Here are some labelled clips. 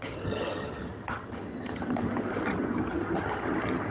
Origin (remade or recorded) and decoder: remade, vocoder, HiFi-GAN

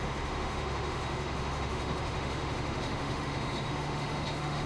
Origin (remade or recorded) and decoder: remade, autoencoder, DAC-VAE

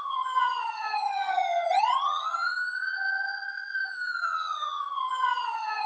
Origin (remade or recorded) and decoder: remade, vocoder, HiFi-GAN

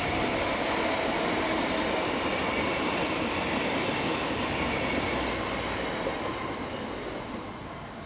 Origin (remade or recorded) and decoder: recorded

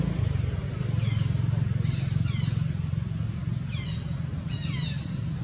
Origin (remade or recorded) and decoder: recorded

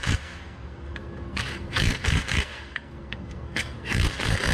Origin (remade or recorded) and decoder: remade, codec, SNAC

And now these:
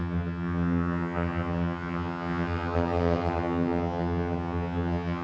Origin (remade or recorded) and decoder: remade, vocoder, HiFi-GAN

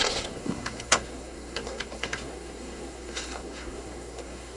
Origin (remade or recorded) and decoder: remade, codec, SNAC